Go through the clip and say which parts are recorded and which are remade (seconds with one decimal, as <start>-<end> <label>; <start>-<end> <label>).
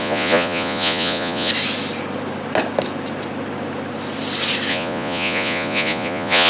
0.0-1.5 remade; 1.5-4.7 recorded; 4.7-6.5 remade